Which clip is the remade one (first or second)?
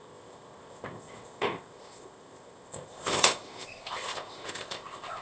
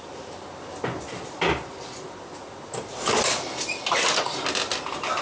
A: first